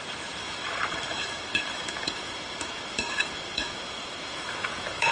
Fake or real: fake